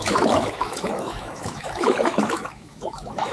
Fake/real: fake